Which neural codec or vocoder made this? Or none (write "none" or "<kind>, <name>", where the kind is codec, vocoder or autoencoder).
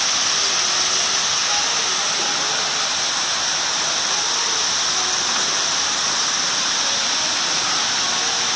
none